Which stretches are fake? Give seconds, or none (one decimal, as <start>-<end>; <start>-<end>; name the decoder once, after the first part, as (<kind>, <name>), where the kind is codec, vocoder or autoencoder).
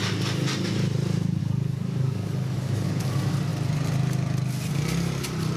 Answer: 1.4-3.0 (codec, DAC)